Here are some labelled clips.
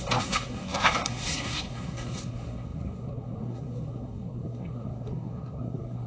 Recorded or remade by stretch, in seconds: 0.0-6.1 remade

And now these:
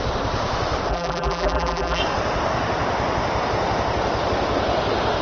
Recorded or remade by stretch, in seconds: 0.0-0.9 recorded; 0.9-2.0 remade; 2.0-5.2 recorded

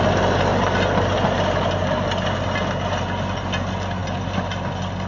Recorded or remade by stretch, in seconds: 0.0-5.1 recorded

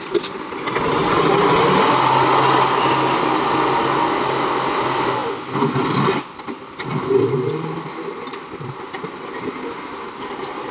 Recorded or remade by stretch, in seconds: 0.0-10.7 recorded

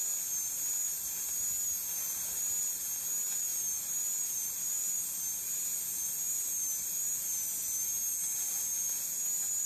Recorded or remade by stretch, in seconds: 0.0-9.7 recorded

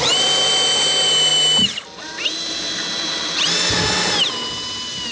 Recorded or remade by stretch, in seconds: 0.0-5.1 recorded